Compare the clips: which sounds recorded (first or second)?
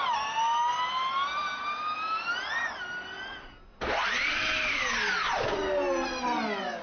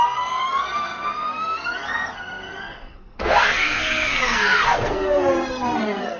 first